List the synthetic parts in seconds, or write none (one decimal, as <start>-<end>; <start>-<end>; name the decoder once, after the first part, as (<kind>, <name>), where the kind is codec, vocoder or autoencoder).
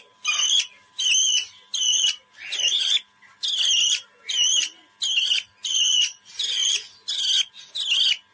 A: none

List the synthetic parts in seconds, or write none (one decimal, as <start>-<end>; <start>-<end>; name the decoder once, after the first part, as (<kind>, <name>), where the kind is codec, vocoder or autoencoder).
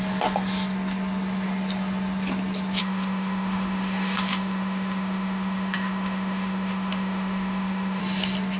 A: 2.8-8.0 (autoencoder, DAC-VAE)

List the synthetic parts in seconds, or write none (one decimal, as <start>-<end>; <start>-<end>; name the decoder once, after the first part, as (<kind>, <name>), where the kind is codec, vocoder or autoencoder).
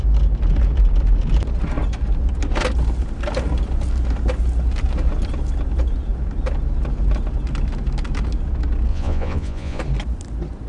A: 8.9-9.8 (vocoder, Vocos)